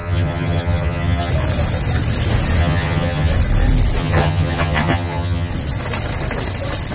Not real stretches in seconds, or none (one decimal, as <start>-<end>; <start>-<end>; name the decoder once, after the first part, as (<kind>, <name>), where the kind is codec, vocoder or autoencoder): 0.0-1.3 (vocoder, HiFi-GAN); 2.6-3.3; 4.0-5.5